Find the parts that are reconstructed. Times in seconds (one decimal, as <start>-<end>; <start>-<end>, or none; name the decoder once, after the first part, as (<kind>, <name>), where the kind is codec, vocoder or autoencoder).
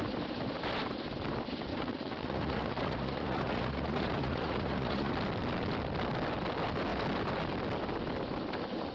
1.7-5.1 (vocoder, Vocos)